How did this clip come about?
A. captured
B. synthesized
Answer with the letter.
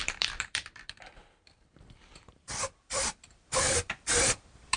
B